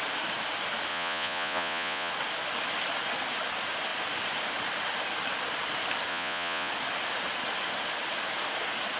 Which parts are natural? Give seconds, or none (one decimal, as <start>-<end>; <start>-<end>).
0.0-0.9; 2.1-6.1; 6.7-9.0